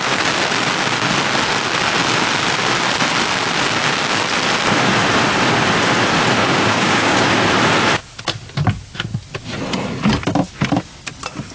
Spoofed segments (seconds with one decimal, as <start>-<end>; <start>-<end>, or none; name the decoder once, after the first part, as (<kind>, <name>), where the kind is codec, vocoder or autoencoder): 6.4-7.3 (codec, DAC)